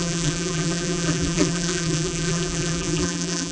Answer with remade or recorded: remade